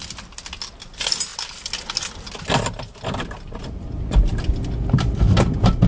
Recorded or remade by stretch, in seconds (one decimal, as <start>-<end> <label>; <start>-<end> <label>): 0.0-5.9 recorded